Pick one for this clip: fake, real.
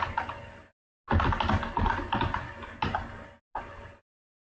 real